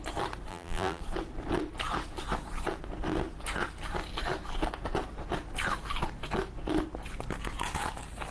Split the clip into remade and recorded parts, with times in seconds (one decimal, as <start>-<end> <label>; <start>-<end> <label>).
0.0-0.5 recorded; 0.5-1.0 remade; 1.0-8.3 recorded